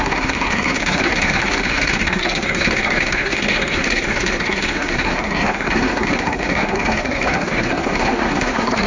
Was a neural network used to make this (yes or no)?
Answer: yes